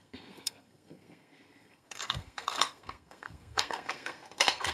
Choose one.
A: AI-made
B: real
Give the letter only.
A